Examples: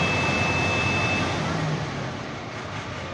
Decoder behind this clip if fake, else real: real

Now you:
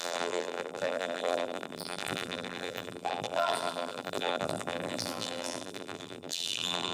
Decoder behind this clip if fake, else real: fake, vocoder, BigVGAN v2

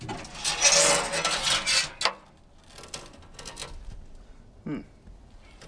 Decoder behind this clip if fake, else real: real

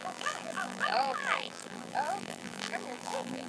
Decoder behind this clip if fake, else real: fake, vocoder, BigVGAN v2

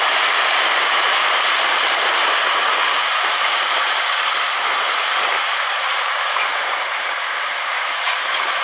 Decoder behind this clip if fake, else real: fake, vocoder, BigVGAN v2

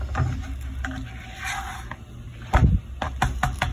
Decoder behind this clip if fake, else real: real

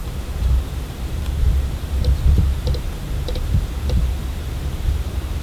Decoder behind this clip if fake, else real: fake, vocoder, BigVGAN v2